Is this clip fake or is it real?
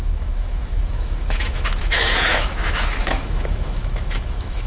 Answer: fake